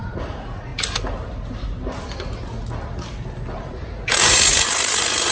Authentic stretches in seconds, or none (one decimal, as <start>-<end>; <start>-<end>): 0.7-3.6